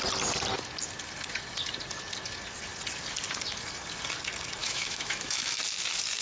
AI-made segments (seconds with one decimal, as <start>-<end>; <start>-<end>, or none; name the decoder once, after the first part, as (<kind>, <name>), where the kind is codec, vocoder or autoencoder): 4.6-5.6 (autoencoder, DAC-VAE)